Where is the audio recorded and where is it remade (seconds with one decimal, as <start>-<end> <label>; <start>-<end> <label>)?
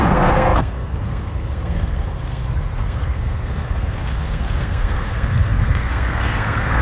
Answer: 0.0-6.8 remade